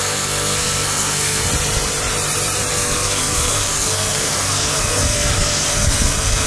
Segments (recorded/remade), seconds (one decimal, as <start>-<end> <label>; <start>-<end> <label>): 0.0-1.5 remade; 1.5-2.7 recorded; 2.7-6.5 remade